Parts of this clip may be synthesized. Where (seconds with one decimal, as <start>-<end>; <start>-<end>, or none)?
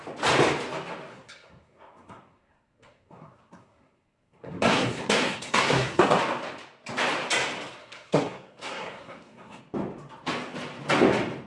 1.1-6.2; 7.8-9.6